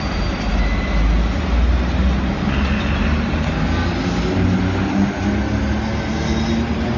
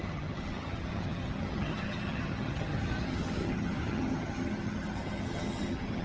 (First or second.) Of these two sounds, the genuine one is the first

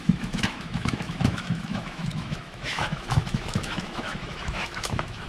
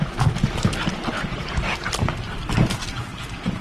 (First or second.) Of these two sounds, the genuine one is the second